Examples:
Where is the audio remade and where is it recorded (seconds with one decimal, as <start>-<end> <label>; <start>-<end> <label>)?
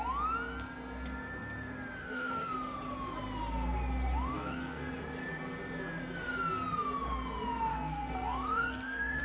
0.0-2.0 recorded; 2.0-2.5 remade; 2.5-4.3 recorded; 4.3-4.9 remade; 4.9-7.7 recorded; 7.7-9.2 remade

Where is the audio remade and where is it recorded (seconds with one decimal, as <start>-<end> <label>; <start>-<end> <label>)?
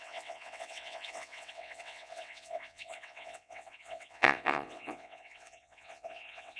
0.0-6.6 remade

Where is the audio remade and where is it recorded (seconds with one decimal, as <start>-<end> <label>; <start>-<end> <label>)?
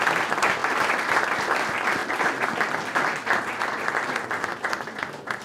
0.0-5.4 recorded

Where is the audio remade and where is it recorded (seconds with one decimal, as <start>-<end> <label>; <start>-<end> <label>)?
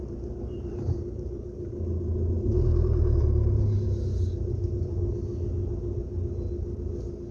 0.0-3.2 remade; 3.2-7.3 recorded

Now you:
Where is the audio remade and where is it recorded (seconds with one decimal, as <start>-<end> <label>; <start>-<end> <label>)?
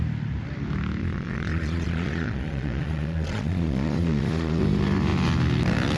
0.0-1.0 recorded; 1.0-4.6 remade; 4.6-6.0 recorded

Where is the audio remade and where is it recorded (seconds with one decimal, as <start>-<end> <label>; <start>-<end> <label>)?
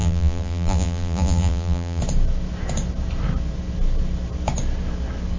0.0-2.0 remade; 2.0-5.4 recorded